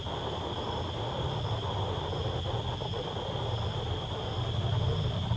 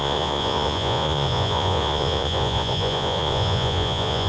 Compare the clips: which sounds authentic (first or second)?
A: first